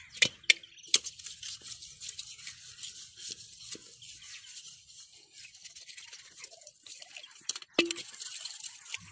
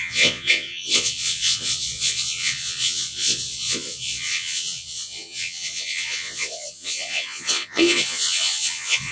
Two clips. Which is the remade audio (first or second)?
second